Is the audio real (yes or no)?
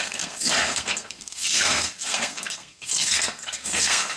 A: no